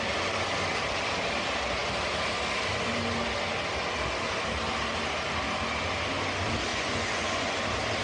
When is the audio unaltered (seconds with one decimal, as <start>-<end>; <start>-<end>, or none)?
0.0-6.7; 7.6-8.0